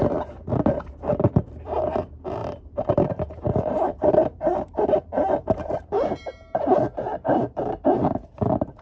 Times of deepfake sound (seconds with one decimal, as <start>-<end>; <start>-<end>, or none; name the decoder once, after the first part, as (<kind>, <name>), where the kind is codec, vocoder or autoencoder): 0.0-8.8 (vocoder, BigVGAN v2)